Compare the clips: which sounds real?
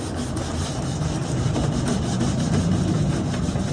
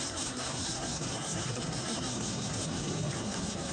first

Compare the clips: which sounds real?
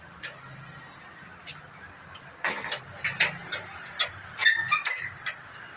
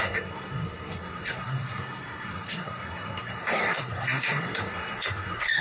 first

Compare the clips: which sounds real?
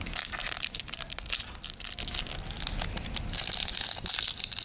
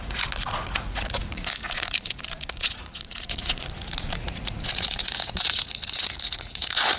first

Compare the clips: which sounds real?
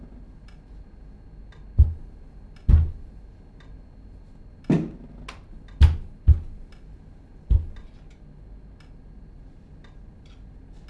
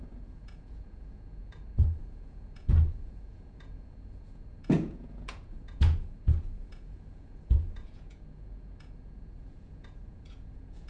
first